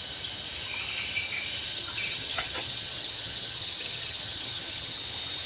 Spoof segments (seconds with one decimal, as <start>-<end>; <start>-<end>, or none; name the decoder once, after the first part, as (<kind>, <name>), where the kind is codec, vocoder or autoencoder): 1.7-5.0 (vocoder, HiFi-GAN)